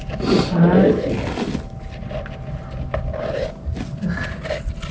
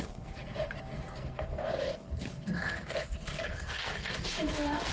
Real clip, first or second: first